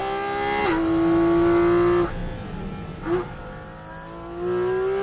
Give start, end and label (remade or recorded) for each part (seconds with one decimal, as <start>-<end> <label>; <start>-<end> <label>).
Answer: 0.0-5.0 recorded